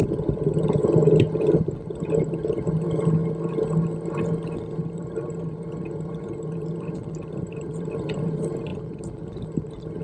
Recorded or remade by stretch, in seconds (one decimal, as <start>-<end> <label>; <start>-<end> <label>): 0.0-3.2 remade; 3.2-4.9 recorded; 4.9-10.0 remade